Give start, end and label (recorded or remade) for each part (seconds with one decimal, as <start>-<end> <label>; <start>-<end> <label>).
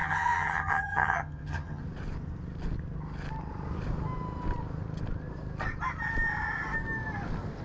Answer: 0.0-1.8 remade; 1.8-7.6 recorded